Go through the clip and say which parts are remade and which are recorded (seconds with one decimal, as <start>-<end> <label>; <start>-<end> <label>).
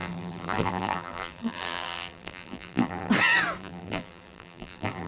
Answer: 0.0-3.1 remade; 3.1-3.6 recorded; 3.6-5.1 remade